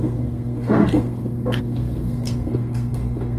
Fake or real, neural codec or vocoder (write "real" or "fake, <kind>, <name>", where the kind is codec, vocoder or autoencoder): fake, codec, SNAC